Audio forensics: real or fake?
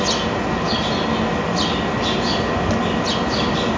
real